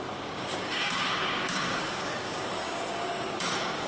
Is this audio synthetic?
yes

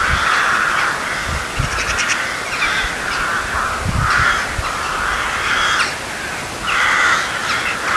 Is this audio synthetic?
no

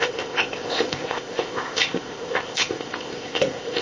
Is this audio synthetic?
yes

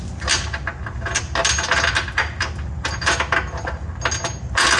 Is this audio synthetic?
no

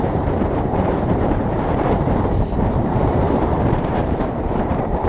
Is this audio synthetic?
yes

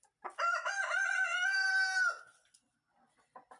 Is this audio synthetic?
no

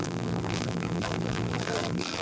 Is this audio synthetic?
yes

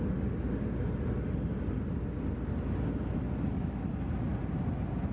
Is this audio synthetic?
no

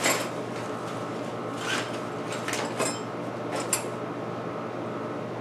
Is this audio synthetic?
no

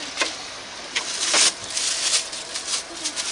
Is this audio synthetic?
no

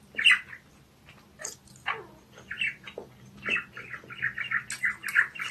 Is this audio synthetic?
no